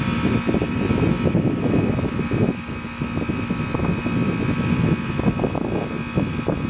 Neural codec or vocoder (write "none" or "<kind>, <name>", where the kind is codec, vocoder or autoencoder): none